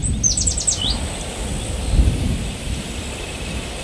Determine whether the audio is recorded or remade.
recorded